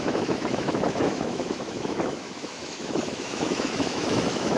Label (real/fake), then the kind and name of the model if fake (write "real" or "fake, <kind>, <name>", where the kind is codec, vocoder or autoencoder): fake, autoencoder, DAC-VAE